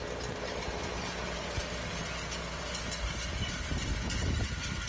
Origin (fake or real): real